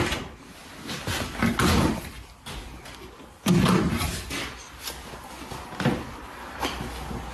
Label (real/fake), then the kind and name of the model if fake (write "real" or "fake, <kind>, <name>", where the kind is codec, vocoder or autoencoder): real